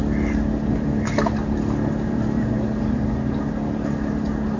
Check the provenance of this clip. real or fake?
real